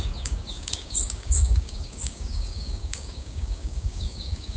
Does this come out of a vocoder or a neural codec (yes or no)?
yes